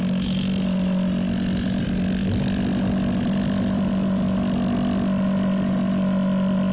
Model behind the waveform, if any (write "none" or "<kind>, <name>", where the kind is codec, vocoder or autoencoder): none